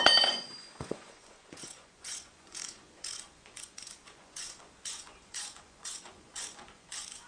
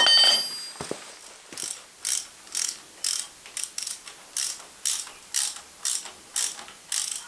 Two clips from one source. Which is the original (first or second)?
second